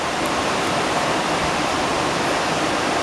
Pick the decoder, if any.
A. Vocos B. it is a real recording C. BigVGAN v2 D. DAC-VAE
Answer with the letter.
B